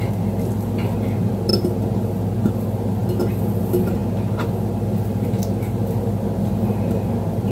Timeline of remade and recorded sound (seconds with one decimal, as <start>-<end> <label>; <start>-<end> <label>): 0.0-7.5 recorded

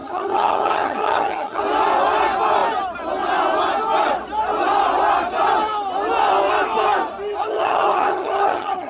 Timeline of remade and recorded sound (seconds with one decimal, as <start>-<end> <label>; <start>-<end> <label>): 0.0-1.6 remade; 1.6-7.4 recorded; 7.4-8.9 remade